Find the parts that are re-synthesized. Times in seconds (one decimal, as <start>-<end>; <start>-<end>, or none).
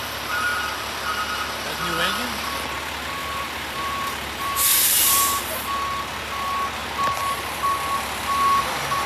3.2-5.4